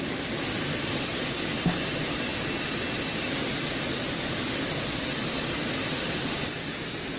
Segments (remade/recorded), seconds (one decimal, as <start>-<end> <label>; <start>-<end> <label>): 0.0-7.2 recorded